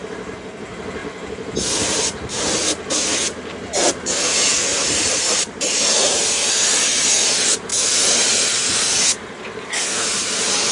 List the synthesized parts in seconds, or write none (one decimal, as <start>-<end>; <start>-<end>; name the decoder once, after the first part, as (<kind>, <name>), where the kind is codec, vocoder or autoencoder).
4.7-6.2 (vocoder, BigVGAN v2)